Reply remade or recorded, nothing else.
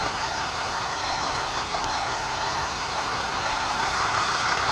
remade